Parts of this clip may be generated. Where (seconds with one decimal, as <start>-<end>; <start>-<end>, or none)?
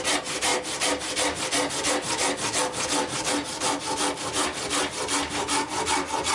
none